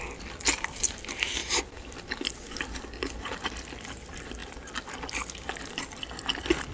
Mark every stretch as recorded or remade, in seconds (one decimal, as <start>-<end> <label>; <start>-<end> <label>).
0.0-1.4 recorded; 1.4-2.1 remade; 2.1-6.7 recorded